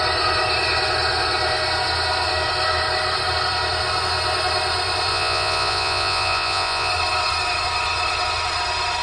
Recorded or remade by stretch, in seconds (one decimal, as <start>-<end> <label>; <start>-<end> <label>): 0.0-5.1 recorded; 5.1-6.9 remade; 6.9-9.0 recorded